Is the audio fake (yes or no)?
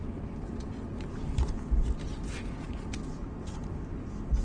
no